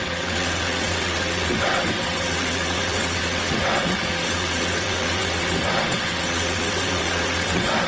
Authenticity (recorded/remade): remade